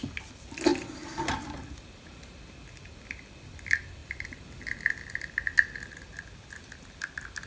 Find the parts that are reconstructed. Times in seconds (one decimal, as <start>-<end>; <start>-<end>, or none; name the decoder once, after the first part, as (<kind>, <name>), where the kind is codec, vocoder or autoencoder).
none